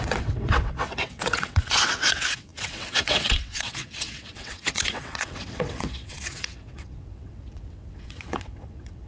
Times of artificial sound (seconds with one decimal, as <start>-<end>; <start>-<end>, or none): 0.0-9.1

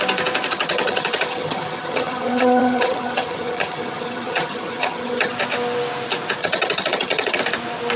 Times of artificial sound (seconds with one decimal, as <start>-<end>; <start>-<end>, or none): 0.5-5.3; 6.4-7.4

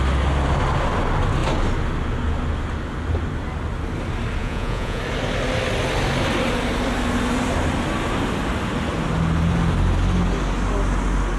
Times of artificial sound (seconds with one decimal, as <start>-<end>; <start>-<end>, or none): 4.4-5.0

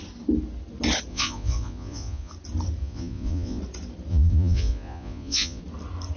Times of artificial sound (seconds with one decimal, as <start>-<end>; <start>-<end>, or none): 1.1-2.3; 2.8-3.6; 4.1-5.6

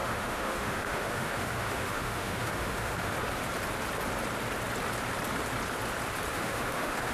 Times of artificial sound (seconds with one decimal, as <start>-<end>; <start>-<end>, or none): 0.0-3.1; 6.3-7.1

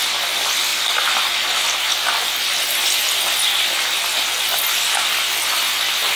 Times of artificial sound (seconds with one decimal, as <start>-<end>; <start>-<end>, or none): none